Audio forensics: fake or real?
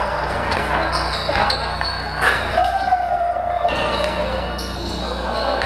fake